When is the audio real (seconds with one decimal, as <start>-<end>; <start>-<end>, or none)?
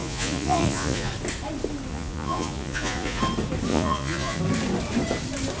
1.1-1.9; 3.2-3.7; 4.4-5.6